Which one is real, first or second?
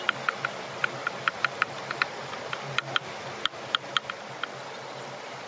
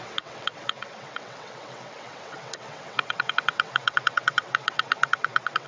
first